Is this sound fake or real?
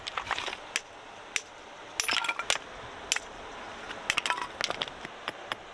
real